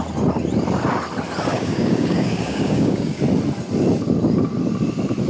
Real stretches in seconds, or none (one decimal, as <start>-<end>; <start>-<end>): 0.0-1.5; 3.2-5.3